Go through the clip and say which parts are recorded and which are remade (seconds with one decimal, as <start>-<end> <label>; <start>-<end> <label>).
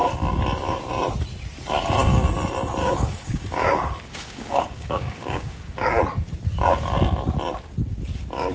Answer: 0.0-2.8 recorded; 2.8-5.9 remade; 5.9-8.5 recorded